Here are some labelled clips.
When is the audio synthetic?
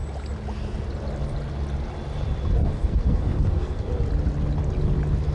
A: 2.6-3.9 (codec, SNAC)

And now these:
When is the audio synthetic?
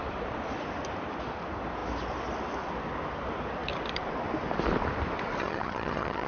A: 5.4-6.3 (vocoder, HiFi-GAN)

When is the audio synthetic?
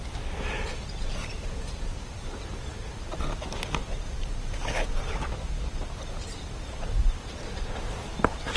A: none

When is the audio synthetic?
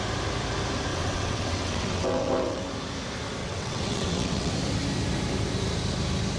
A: 0.9-2.6 (vocoder, WaveNeXt); 3.4-4.5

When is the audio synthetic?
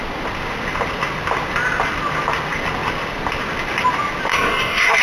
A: 4.3-5.0 (codec, DAC)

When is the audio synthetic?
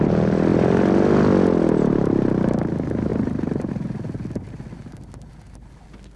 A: 0.5-1.1 (vocoder, BigVGAN v2); 3.1-3.7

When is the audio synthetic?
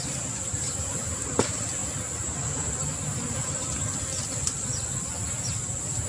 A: none